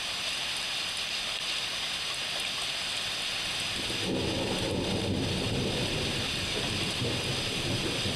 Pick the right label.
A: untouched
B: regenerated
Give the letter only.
A